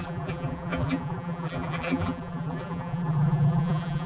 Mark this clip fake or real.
fake